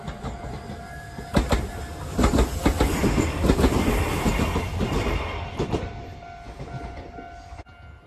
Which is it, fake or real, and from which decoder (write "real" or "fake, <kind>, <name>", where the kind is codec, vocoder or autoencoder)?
real